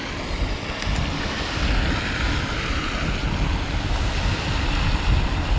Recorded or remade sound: recorded